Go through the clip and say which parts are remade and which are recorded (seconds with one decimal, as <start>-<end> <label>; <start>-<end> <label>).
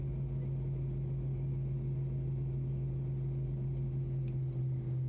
0.0-5.1 recorded